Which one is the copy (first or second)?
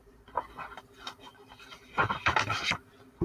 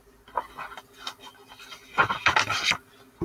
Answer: first